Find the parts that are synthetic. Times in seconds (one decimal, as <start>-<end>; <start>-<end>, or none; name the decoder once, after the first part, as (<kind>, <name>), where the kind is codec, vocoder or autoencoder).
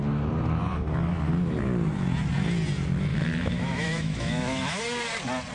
3.1-4.8 (autoencoder, DAC-VAE)